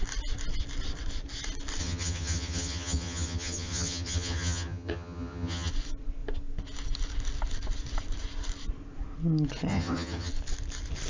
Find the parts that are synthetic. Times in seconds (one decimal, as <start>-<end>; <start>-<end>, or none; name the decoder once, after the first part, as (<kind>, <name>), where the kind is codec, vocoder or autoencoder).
1.8-5.7 (vocoder, HiFi-GAN); 9.7-10.3

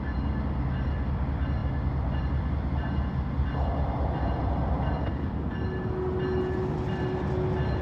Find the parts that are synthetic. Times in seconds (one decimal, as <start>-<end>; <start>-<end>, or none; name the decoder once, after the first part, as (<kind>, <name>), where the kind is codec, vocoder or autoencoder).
none